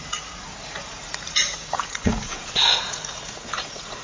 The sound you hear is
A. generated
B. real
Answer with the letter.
A